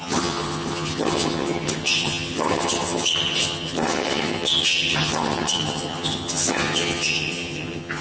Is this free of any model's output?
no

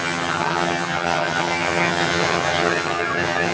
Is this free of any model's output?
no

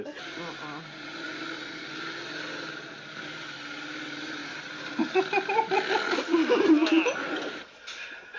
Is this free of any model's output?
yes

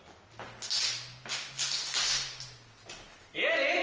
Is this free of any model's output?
yes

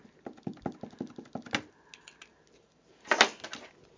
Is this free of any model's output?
yes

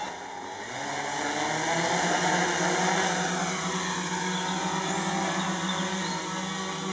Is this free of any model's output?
yes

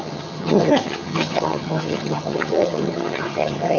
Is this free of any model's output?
no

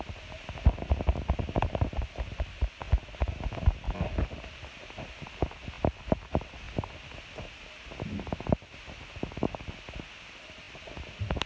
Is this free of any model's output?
yes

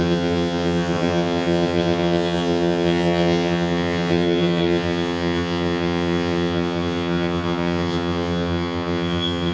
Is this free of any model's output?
no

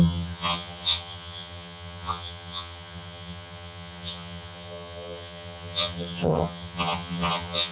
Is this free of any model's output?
no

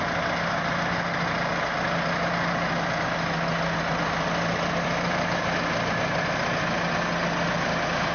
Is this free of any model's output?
yes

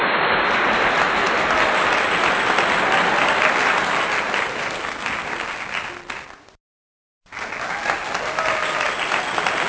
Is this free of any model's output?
yes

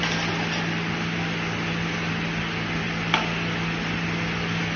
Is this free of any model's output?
yes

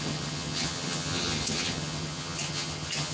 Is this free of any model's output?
no